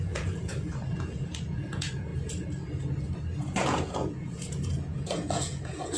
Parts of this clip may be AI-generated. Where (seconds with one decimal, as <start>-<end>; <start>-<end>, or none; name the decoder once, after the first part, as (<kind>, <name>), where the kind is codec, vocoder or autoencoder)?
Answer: 0.0-2.1 (vocoder, Vocos); 3.4-6.0